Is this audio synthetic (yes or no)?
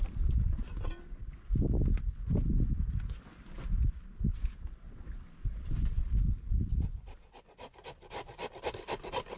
no